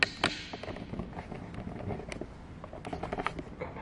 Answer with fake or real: real